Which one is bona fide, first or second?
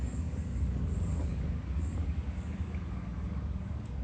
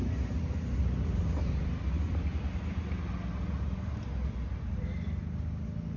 second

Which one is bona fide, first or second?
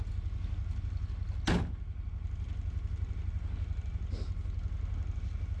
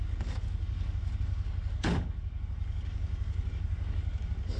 first